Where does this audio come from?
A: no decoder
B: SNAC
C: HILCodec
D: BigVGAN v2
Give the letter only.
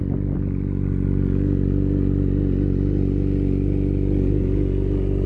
A